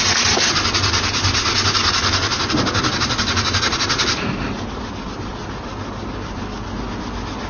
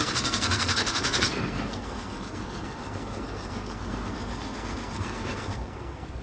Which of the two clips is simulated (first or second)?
second